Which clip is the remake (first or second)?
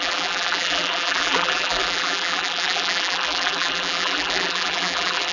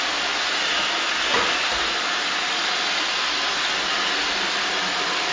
first